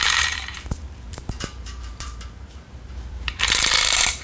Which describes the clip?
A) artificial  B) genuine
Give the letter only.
A